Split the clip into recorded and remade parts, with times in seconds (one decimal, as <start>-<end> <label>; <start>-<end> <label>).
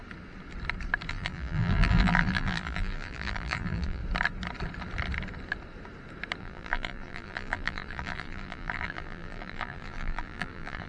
0.0-1.1 recorded; 1.1-4.0 remade; 4.0-6.4 recorded; 6.4-10.9 remade